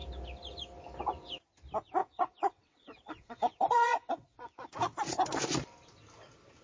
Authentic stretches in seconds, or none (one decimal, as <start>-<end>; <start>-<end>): 0.0-2.0; 4.7-6.6